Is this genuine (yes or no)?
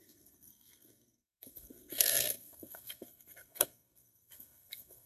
no